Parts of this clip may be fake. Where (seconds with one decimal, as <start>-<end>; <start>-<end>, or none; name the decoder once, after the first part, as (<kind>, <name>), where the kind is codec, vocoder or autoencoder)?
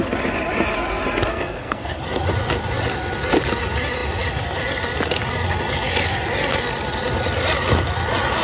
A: 1.3-2.0 (codec, SNAC)